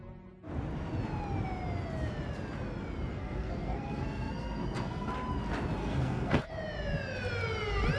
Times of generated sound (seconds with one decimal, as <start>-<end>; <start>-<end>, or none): 3.1-5.1; 5.8-6.5